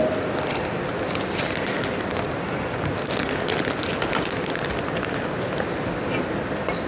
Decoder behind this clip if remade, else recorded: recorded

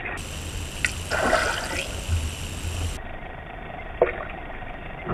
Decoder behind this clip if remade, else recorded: recorded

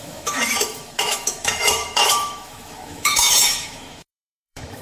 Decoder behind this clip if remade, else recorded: remade, autoencoder, DAC-VAE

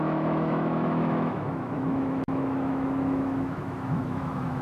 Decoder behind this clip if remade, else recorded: remade, autoencoder, DAC-VAE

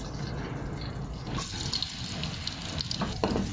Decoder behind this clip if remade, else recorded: recorded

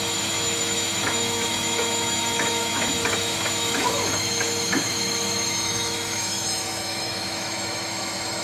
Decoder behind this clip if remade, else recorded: remade, autoencoder, DAC-VAE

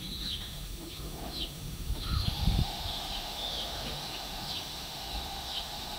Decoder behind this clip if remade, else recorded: remade, autoencoder, DAC-VAE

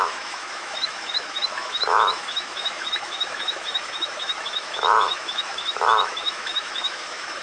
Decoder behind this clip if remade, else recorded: remade, autoencoder, DAC-VAE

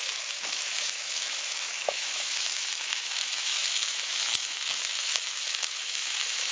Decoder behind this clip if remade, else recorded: remade, autoencoder, DAC-VAE